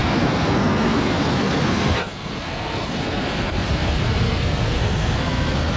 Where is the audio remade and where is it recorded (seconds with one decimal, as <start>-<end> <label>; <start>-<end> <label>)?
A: 0.0-5.8 remade